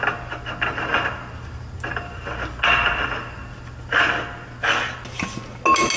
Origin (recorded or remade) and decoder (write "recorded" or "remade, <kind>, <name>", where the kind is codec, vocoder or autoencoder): recorded